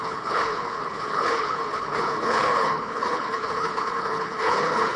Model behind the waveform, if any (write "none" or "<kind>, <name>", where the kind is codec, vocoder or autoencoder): codec, HILCodec